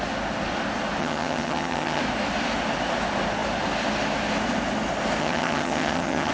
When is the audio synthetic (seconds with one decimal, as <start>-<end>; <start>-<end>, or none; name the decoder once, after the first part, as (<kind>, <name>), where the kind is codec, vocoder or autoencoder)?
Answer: 1.0-2.0 (vocoder, HiFi-GAN); 5.2-6.3